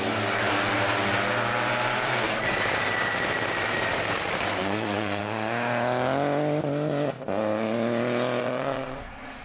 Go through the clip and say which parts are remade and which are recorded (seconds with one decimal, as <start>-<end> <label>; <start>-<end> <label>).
0.0-4.6 recorded; 4.6-5.2 remade; 5.2-8.4 recorded; 8.4-9.4 remade